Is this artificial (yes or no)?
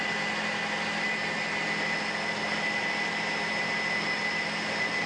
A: no